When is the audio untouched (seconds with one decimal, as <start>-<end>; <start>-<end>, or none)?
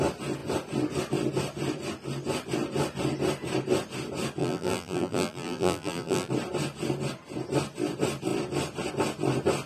0.0-4.4; 6.3-9.7